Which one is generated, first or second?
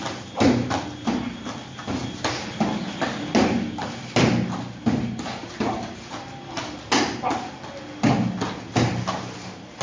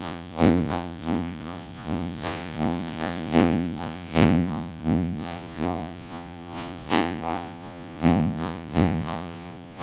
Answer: second